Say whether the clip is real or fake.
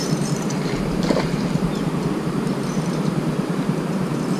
fake